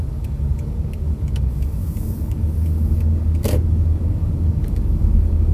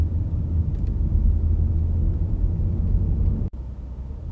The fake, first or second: first